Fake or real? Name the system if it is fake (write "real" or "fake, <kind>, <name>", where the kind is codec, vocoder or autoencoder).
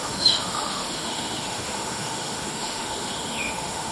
fake, autoencoder, DAC-VAE